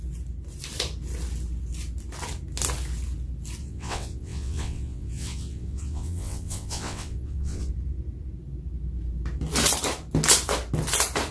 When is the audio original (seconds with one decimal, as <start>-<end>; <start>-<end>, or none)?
0.0-3.6; 7.7-11.3